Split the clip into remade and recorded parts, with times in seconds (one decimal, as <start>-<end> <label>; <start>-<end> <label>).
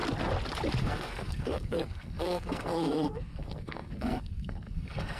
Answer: 0.0-0.8 recorded; 0.8-5.2 remade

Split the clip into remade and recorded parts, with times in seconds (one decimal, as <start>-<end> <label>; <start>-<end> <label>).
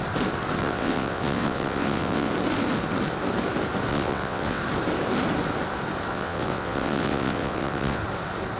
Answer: 0.0-0.6 recorded; 0.6-2.3 remade; 2.3-3.9 recorded; 3.9-4.6 remade; 4.6-6.1 recorded; 6.1-8.0 remade; 8.0-8.6 recorded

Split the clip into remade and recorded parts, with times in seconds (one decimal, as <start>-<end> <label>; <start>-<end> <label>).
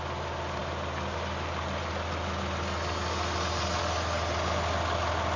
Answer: 0.0-5.4 recorded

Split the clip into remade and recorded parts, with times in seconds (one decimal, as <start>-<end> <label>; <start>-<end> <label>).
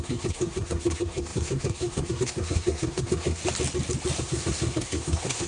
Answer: 0.0-3.4 remade; 3.4-4.2 recorded; 4.2-5.5 remade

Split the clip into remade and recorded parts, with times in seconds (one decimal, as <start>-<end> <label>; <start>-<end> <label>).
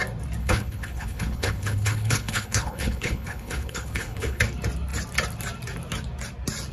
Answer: 0.0-0.4 recorded; 0.4-4.4 remade; 4.4-6.7 recorded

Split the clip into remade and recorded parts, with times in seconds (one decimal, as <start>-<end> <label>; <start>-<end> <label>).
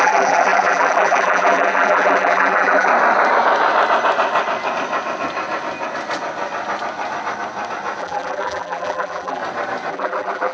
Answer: 0.0-2.9 remade; 2.9-8.0 recorded; 8.0-9.4 remade; 9.4-9.9 recorded; 9.9-10.5 remade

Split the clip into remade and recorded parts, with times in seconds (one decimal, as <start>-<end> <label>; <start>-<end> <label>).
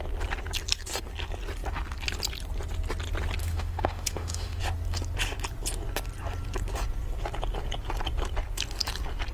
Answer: 0.0-3.4 recorded; 3.4-4.6 remade; 4.6-9.3 recorded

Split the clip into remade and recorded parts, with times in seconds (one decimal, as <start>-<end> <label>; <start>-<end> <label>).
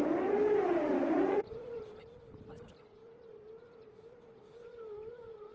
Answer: 0.0-1.0 recorded; 1.0-1.8 remade; 1.8-5.5 recorded